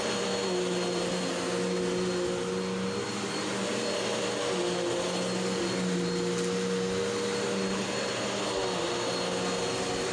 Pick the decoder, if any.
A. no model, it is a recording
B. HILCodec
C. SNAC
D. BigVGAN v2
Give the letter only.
A